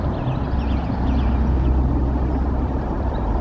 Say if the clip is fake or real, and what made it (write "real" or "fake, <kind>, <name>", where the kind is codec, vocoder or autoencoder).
real